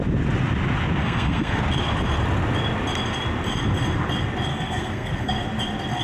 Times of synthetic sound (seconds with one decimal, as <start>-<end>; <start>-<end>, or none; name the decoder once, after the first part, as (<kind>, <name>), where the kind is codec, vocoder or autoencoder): 1.0-1.6 (codec, SNAC); 4.5-5.3